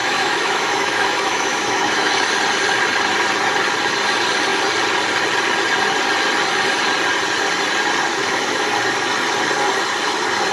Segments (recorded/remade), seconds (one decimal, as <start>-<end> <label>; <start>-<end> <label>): 0.0-2.1 remade; 2.1-8.1 recorded; 8.1-8.7 remade; 8.7-10.5 recorded

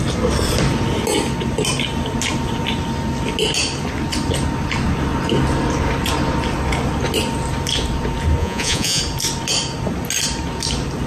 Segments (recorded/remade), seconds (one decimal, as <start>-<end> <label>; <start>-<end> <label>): 0.0-8.4 recorded; 8.4-9.0 remade; 9.0-11.1 recorded

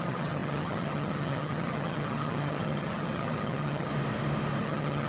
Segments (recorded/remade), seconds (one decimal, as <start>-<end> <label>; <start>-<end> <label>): 0.0-3.9 remade; 3.9-4.6 recorded; 4.6-5.1 remade

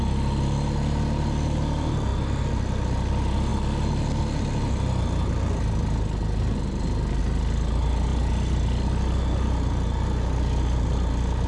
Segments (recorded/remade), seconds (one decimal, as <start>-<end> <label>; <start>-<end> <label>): 0.0-11.5 recorded

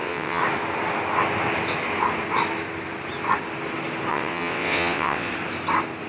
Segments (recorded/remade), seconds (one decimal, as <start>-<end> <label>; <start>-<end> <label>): 0.0-0.4 remade; 0.4-4.1 recorded; 4.1-5.3 remade; 5.3-6.1 recorded